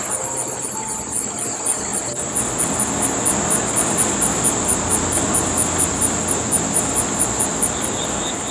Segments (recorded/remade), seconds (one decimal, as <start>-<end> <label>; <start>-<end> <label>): 0.0-8.5 recorded